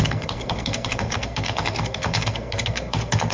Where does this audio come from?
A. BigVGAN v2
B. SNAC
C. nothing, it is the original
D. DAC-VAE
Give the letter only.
B